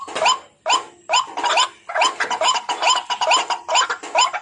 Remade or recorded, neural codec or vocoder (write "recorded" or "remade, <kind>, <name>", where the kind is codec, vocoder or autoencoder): recorded